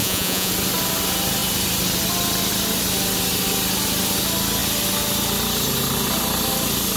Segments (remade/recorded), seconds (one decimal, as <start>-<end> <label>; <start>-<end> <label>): 0.0-0.5 remade; 0.5-7.0 recorded